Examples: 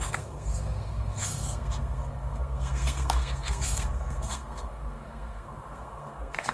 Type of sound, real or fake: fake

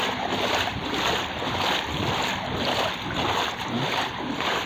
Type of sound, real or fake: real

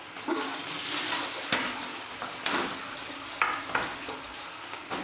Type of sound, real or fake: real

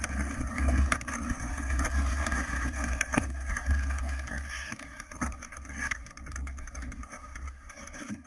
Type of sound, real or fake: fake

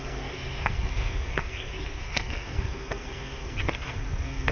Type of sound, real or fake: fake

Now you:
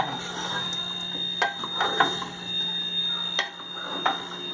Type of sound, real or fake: real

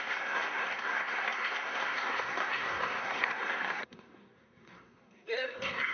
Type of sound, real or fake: fake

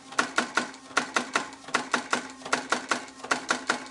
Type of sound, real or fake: real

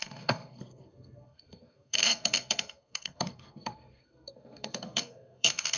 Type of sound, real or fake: fake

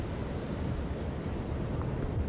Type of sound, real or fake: real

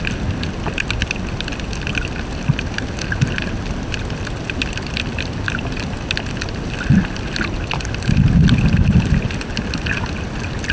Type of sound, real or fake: real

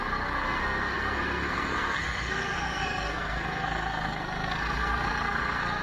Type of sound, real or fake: fake